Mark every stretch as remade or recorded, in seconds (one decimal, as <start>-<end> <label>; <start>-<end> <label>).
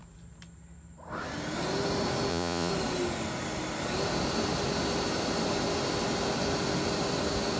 0.0-2.3 recorded; 2.3-2.7 remade; 2.7-7.6 recorded